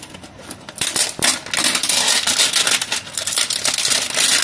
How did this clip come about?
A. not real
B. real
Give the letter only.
B